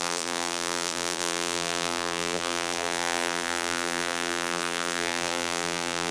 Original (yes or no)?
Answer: no